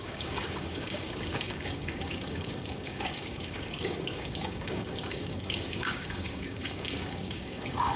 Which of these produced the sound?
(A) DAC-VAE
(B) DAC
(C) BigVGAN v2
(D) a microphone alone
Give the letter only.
B